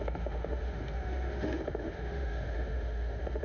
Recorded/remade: remade